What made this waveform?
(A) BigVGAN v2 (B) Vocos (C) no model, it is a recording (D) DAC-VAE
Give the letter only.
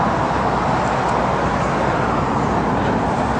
C